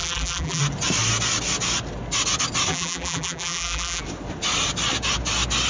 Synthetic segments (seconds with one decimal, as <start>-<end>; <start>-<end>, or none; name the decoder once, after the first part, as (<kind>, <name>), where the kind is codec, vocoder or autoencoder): 0.0-0.6 (vocoder, BigVGAN v2); 2.7-4.0